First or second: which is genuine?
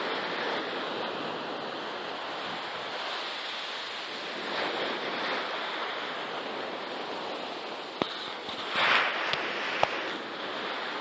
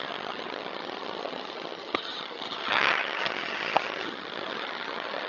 first